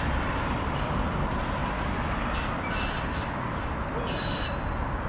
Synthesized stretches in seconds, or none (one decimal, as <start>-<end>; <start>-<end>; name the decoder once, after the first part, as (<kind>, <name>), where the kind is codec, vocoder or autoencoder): 0.0-1.6 (vocoder, BigVGAN v2); 4.2-5.1